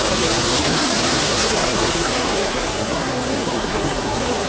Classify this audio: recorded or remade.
remade